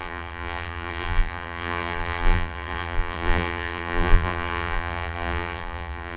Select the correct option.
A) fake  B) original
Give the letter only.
A